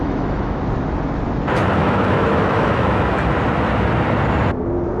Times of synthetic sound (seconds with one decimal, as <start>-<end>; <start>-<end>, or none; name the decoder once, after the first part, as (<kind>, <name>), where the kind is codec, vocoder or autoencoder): 0.0-0.6 (autoencoder, DAC-VAE); 1.8-3.1